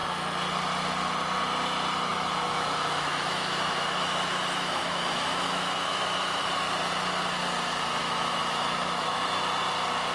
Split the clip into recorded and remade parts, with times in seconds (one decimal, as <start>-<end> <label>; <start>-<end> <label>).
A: 0.0-2.1 recorded; 2.1-6.5 remade; 6.5-8.0 recorded; 8.0-9.4 remade; 9.4-10.1 recorded